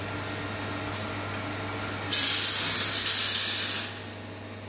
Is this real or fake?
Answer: real